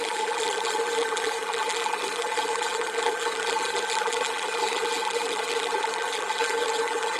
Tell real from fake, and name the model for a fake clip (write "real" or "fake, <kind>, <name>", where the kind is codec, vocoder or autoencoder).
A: fake, vocoder, BigVGAN v2